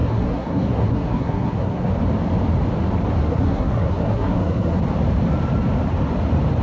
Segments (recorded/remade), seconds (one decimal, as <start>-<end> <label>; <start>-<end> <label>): 0.0-1.9 remade; 1.9-3.2 recorded; 3.2-4.8 remade; 4.8-6.6 recorded